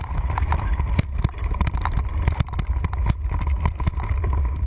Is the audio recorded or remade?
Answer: remade